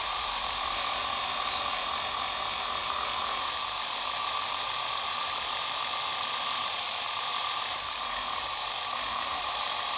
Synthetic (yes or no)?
yes